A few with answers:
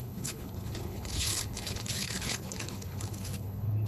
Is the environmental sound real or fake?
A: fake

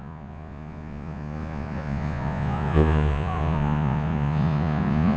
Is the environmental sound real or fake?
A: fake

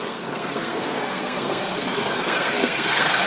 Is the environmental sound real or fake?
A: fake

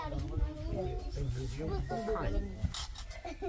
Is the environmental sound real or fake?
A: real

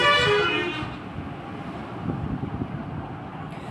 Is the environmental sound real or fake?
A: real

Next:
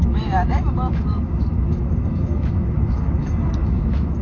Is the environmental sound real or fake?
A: fake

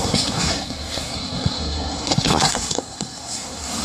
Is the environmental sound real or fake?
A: fake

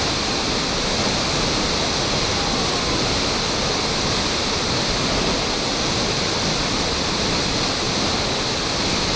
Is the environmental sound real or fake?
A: real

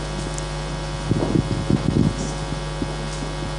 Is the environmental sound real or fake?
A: real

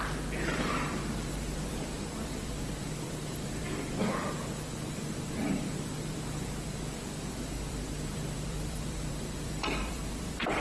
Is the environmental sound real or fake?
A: fake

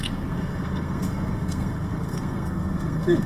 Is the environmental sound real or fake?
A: fake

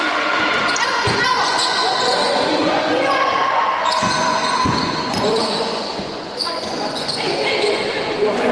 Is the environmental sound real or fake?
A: fake